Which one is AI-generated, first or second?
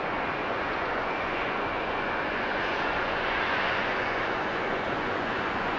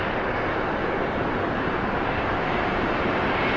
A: first